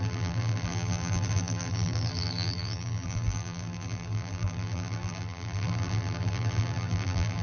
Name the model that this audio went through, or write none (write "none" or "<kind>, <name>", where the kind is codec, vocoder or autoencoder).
vocoder, BigVGAN v2